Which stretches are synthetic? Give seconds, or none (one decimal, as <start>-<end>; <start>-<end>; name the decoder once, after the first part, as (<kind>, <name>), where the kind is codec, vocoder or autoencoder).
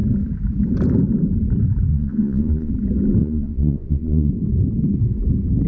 1.9-2.7 (vocoder, Vocos); 3.2-4.3